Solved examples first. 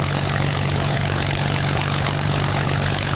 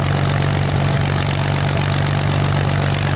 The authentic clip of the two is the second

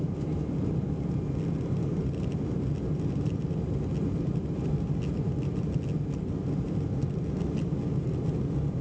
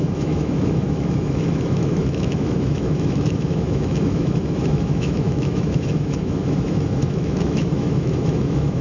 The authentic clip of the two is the first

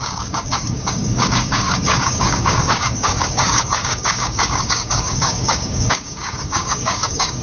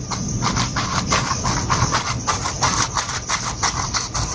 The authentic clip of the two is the second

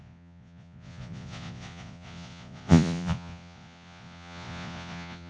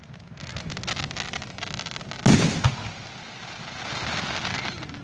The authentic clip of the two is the second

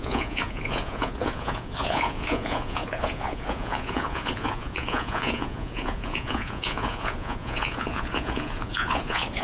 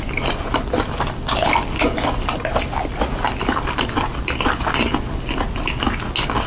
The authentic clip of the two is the second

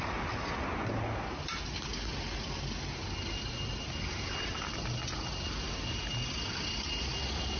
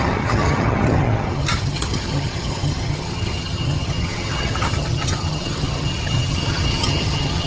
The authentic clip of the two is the first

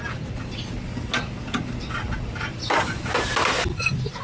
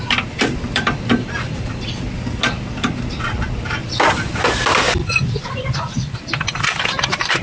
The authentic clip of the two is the first